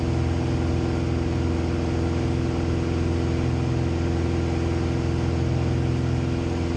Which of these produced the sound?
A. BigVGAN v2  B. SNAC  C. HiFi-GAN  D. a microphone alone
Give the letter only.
D